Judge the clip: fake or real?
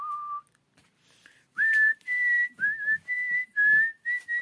real